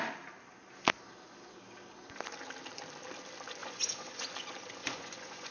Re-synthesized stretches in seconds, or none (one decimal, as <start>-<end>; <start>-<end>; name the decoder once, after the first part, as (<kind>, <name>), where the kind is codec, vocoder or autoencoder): 3.6-4.2 (vocoder, Vocos); 4.8-5.5